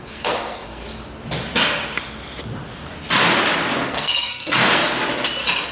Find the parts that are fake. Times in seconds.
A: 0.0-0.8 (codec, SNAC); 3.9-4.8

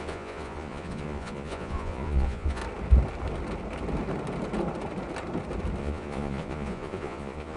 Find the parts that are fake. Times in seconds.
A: 0.0-2.6 (vocoder, Vocos); 5.8-7.6

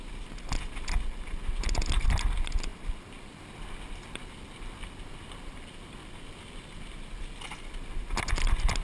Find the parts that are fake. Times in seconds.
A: none